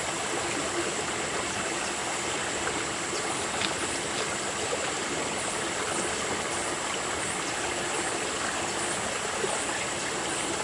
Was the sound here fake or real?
real